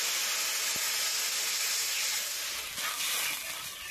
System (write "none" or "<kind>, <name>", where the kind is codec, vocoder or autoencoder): none